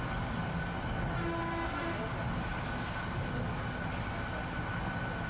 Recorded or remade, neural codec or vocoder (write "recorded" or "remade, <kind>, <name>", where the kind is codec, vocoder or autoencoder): recorded